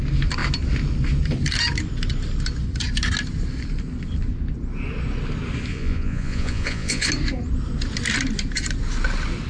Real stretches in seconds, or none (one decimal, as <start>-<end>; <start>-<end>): 0.0-5.7; 7.1-9.5